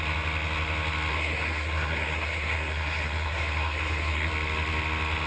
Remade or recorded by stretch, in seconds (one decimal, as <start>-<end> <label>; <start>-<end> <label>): 0.0-1.1 recorded; 1.1-4.3 remade; 4.3-5.3 recorded

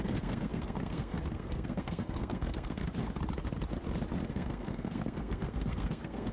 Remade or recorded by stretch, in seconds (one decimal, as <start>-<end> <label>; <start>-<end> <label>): 0.0-2.8 remade; 2.8-4.3 recorded; 4.3-6.3 remade